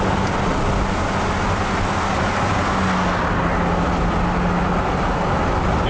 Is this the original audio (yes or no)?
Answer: yes